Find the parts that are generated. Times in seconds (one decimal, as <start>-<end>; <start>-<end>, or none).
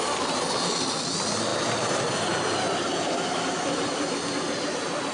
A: none